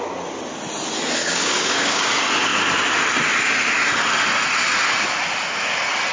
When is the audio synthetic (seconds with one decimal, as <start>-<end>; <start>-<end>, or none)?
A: 1.2-2.1